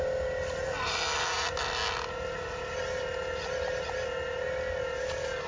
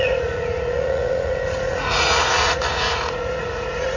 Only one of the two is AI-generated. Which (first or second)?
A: second